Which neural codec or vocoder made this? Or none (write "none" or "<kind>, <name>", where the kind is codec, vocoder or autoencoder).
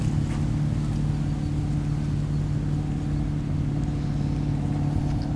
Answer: none